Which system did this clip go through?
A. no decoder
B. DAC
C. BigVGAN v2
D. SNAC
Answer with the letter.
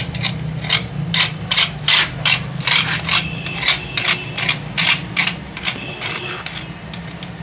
A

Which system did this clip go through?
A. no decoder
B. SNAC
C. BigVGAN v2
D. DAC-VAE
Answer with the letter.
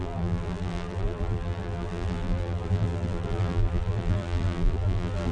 C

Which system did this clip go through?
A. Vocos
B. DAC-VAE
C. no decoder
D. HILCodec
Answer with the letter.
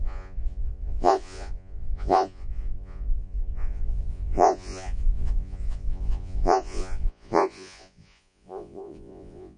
A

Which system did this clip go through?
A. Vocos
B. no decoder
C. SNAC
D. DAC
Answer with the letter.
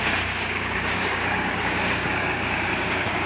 D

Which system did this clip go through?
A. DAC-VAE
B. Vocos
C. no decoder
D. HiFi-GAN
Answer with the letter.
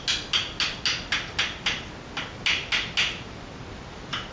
C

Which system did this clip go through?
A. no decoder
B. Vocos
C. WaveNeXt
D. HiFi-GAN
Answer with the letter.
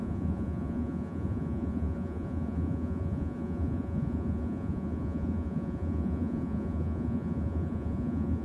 B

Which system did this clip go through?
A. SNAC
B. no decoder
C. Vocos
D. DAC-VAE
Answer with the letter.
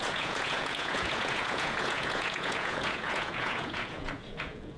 C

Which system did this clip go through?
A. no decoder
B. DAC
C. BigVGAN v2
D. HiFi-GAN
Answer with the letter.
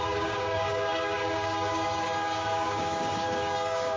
B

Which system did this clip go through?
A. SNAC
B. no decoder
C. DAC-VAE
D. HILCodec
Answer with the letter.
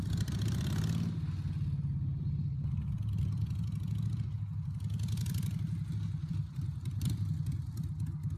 B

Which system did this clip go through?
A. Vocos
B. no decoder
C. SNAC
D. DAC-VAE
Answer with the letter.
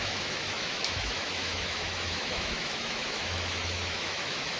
D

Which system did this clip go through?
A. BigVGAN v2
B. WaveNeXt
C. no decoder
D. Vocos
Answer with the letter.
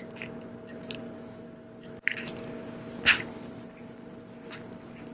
C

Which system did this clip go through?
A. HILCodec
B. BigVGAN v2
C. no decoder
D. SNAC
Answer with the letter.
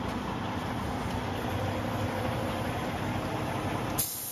C